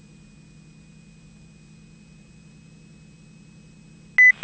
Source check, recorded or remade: recorded